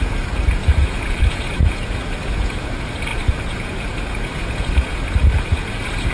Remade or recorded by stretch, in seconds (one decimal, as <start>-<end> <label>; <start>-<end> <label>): 0.0-6.1 remade